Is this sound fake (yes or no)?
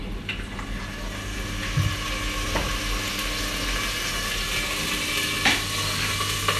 no